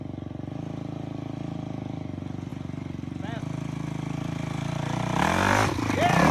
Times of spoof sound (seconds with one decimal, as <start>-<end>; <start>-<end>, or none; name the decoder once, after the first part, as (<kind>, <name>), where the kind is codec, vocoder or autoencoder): none

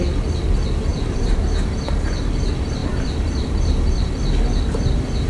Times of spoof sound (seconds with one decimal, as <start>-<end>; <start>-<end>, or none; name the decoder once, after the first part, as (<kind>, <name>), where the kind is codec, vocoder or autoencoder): 0.9-1.4 (vocoder, BigVGAN v2); 2.8-4.1